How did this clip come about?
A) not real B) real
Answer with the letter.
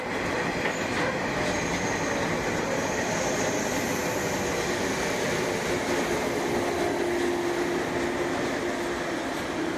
B